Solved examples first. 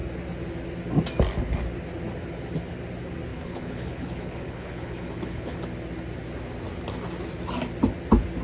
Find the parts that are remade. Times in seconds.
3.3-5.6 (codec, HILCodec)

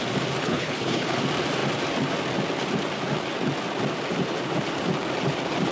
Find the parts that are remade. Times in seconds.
0.4-1.2 (codec, HILCodec)